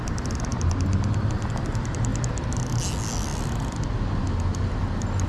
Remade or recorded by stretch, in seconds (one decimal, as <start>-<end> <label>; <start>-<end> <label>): 0.0-5.3 recorded